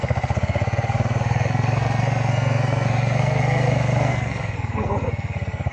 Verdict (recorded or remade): remade